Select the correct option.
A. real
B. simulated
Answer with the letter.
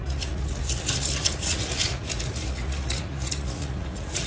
B